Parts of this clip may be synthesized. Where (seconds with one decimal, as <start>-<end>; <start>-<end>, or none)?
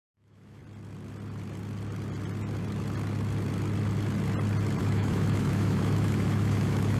0.0-0.6; 4.8-7.0